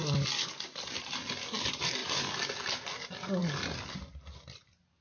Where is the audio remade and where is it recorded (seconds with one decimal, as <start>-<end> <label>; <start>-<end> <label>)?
0.0-5.0 recorded